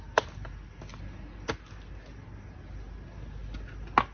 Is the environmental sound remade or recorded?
recorded